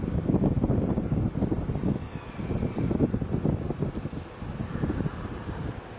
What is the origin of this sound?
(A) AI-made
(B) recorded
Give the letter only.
B